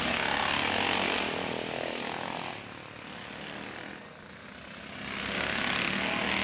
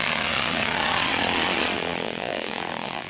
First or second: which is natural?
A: first